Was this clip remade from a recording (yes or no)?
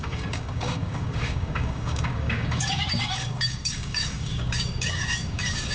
yes